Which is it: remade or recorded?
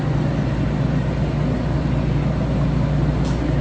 recorded